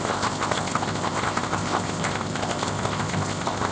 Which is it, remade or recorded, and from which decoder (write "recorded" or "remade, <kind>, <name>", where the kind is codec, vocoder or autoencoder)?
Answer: remade, codec, ZipCodec